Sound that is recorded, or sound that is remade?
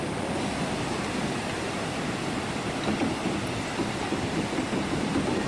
remade